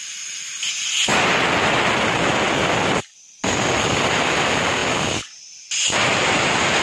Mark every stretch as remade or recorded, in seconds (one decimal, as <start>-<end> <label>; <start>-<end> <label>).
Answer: 0.0-6.8 recorded